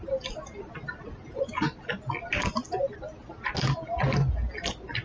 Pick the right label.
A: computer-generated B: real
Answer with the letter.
B